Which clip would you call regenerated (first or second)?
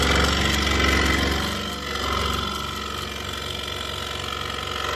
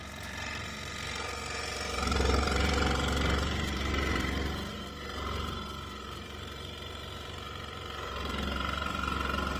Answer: second